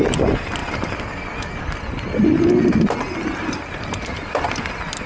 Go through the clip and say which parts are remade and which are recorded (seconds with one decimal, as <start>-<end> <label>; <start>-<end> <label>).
0.0-5.1 recorded